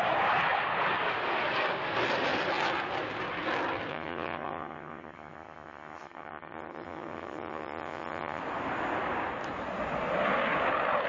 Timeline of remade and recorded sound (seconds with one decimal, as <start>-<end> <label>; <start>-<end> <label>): 0.0-3.9 recorded; 3.9-8.4 remade; 8.4-11.1 recorded